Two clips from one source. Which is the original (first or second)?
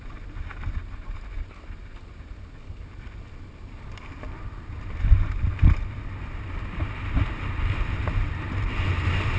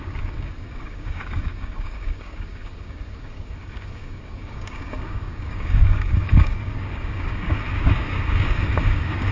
first